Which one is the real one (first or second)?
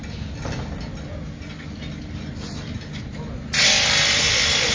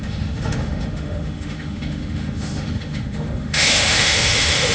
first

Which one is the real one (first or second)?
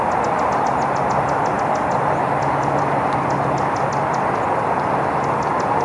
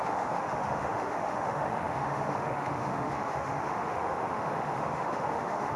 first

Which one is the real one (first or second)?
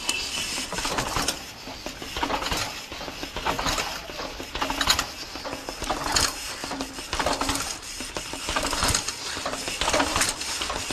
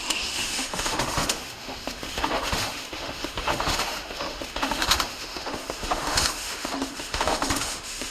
first